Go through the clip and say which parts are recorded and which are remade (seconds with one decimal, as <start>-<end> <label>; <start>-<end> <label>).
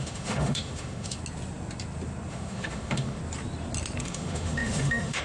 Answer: 0.0-1.2 remade; 1.2-2.3 recorded; 2.3-3.2 remade; 3.2-4.0 recorded; 4.0-5.2 remade